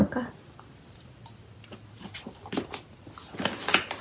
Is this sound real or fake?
real